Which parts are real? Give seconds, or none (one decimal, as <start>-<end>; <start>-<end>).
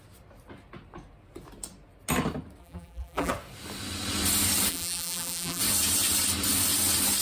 0.0-2.6; 3.3-4.7; 5.6-7.2